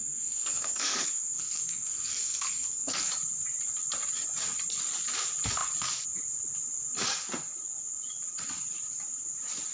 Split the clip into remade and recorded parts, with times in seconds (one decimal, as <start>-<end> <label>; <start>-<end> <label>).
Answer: 0.0-3.1 remade; 3.1-9.7 recorded